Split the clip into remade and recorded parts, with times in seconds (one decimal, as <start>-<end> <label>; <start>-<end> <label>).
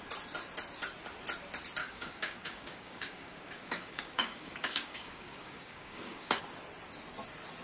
0.0-1.8 recorded; 1.8-6.4 remade; 6.4-7.6 recorded